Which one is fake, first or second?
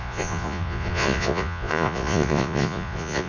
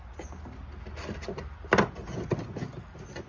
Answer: first